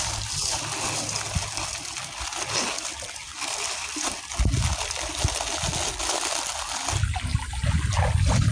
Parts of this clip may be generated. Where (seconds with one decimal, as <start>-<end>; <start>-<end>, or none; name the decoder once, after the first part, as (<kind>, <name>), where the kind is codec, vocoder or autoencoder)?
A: none